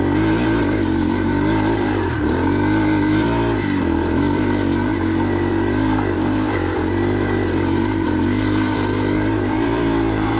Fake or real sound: fake